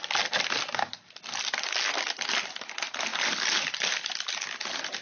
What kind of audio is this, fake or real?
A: real